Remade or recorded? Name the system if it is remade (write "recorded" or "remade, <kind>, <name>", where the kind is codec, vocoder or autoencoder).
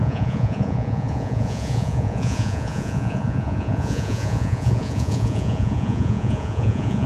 remade, vocoder, Vocos